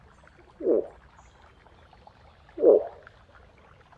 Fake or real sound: real